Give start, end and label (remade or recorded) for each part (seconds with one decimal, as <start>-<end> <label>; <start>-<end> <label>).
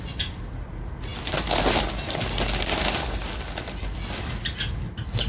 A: 0.0-5.3 recorded